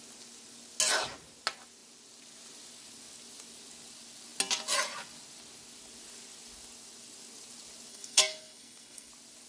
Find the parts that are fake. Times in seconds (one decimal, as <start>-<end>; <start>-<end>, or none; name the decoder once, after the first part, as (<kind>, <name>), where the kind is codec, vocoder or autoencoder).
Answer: 7.9-9.1 (codec, SNAC)